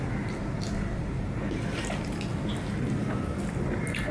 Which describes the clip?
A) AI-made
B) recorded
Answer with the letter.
B